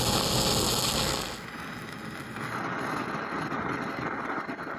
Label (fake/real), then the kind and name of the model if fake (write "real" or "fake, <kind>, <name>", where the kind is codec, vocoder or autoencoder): real